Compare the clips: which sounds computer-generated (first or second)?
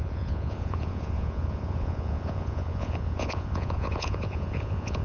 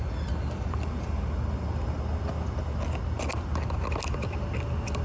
first